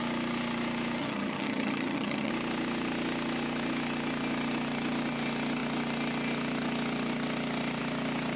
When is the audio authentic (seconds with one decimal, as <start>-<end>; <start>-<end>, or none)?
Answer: 0.0-1.0; 2.3-8.4